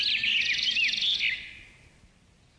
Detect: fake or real real